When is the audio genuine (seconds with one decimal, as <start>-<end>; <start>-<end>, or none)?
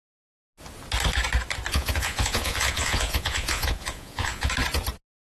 0.0-1.7; 4.5-5.3